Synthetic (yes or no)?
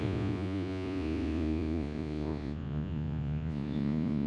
yes